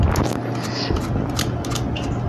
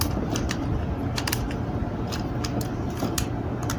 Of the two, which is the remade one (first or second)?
second